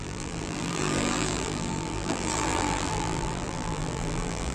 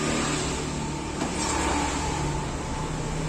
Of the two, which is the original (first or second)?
second